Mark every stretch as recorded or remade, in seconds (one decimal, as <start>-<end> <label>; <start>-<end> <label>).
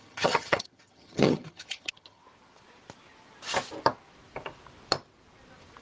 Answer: 0.0-2.2 remade; 2.2-5.8 recorded